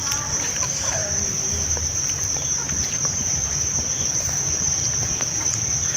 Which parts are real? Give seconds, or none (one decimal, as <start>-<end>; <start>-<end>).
0.0-1.0; 4.3-6.0